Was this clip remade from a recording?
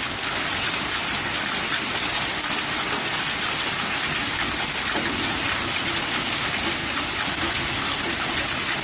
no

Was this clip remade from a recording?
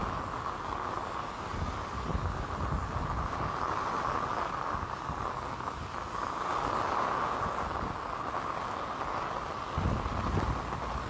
no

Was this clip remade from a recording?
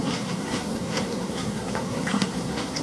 yes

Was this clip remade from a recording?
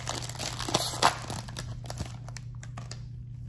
no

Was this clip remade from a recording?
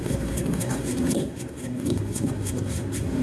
yes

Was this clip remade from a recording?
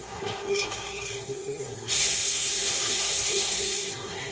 yes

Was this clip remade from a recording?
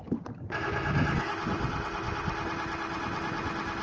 no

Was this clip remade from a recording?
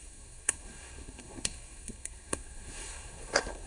yes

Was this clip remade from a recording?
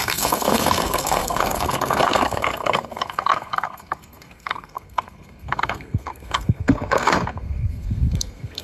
yes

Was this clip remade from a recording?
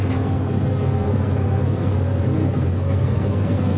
yes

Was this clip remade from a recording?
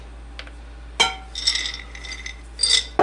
no